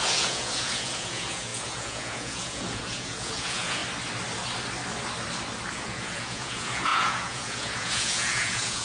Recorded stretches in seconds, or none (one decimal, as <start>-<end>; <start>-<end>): 3.8-5.7